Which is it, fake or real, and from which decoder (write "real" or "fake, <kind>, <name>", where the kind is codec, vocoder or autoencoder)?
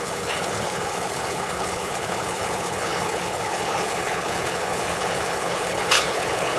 fake, codec, HILCodec